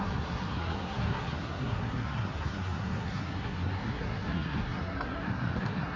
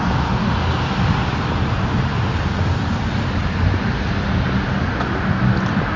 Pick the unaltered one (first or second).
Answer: second